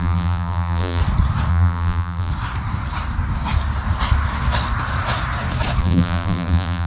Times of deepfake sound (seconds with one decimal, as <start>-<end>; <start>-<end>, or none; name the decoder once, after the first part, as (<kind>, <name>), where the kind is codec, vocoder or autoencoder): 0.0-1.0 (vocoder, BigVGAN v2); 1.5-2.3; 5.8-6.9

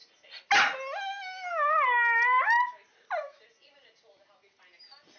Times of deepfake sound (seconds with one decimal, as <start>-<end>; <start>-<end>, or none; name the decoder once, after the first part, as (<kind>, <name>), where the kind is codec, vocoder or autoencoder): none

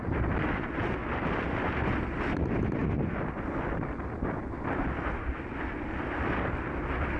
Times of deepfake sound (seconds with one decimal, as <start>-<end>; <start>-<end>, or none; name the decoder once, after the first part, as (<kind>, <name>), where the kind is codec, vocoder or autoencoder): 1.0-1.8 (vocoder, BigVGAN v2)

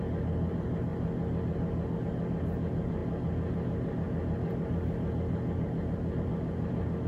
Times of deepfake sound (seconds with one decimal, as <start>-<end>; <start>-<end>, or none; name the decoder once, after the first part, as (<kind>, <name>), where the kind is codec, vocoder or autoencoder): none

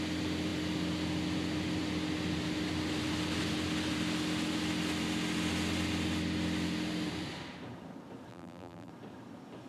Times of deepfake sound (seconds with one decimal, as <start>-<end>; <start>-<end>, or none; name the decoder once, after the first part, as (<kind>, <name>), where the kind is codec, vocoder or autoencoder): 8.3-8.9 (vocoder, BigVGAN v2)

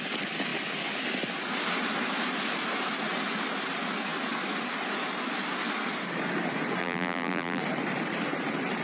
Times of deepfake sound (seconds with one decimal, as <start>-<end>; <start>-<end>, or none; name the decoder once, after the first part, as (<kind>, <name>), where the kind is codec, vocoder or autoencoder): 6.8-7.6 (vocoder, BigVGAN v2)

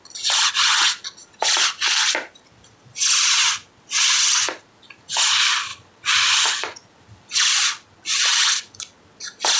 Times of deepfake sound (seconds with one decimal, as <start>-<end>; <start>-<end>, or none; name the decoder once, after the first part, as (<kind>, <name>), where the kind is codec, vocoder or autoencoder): 1.2-5.1 (vocoder, BigVGAN v2); 5.7-7.5